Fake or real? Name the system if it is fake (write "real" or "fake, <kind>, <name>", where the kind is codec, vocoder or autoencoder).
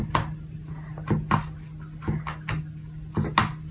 real